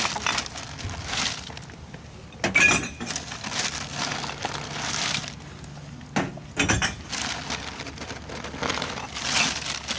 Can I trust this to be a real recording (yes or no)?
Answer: yes